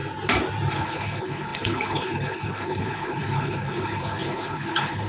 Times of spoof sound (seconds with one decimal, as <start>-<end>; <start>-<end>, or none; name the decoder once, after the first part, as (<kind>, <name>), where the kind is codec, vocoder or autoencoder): 0.7-5.1 (codec, HILCodec)